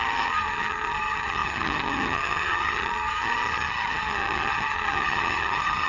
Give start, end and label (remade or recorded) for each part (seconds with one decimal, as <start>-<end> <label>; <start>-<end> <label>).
0.0-5.9 remade